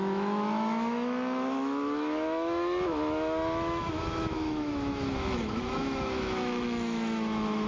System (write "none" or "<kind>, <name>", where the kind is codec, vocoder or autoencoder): autoencoder, DAC-VAE